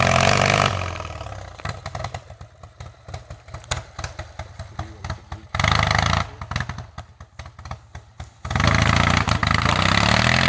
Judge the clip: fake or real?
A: real